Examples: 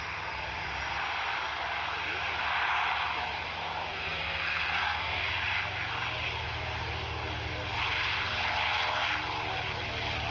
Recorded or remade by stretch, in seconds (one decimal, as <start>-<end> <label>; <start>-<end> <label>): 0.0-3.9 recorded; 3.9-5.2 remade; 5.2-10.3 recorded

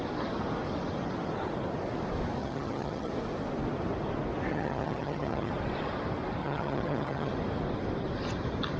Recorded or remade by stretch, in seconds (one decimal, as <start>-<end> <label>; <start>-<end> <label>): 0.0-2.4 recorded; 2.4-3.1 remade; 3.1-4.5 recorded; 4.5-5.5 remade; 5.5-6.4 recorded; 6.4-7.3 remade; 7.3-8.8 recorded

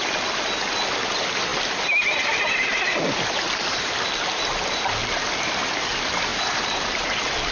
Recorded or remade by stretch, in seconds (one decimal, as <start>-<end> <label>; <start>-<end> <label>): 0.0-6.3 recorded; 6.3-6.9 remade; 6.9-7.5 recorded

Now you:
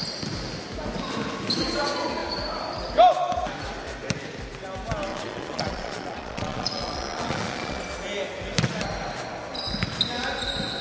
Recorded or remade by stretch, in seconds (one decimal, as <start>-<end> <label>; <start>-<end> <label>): 0.0-5.1 recorded; 5.1-7.8 remade; 7.8-10.8 recorded